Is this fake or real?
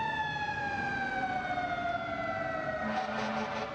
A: real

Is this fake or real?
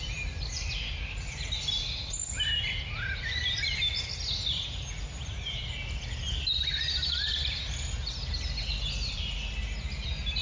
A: real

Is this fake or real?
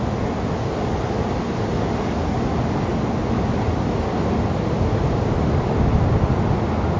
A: real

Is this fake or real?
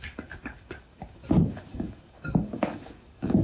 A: fake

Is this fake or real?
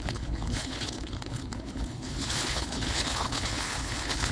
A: fake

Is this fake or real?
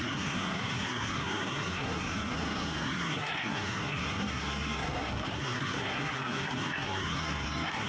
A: fake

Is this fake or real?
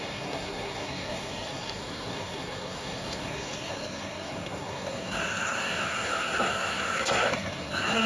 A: fake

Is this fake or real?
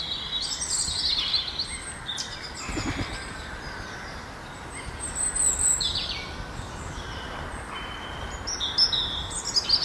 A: real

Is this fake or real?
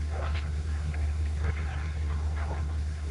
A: fake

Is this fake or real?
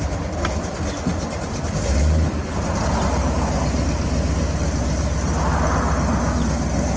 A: real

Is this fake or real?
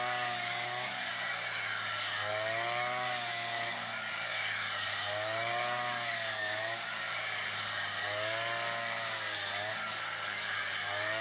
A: fake